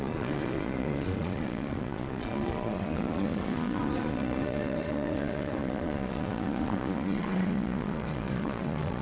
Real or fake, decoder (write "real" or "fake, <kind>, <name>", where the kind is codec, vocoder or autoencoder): fake, vocoder, Vocos